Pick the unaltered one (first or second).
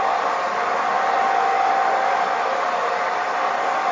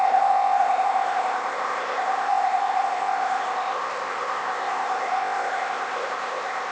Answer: first